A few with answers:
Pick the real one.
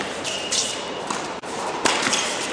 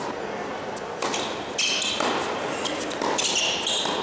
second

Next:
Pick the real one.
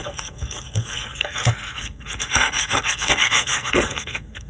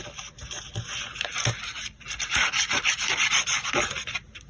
second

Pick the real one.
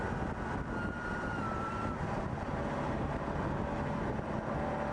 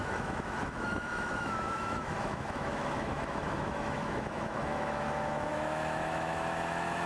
first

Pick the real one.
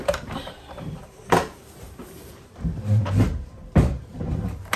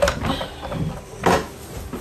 second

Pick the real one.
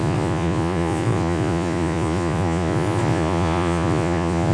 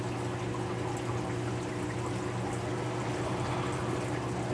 second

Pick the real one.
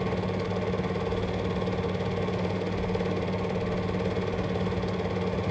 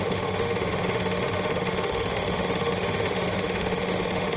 first